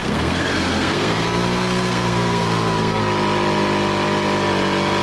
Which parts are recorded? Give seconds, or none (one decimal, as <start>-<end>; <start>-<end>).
3.0-5.0